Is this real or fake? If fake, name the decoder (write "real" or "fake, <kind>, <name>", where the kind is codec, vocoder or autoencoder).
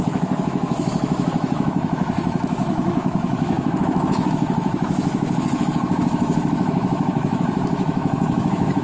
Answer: fake, autoencoder, DAC-VAE